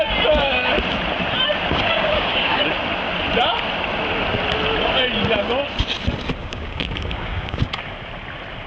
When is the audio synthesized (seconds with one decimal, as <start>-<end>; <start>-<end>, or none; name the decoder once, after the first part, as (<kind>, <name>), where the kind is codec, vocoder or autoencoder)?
1.7-2.6 (codec, DAC); 6.4-7.8